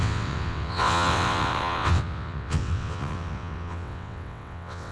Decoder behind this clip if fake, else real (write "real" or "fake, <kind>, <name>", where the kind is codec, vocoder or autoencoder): fake, vocoder, WaveNeXt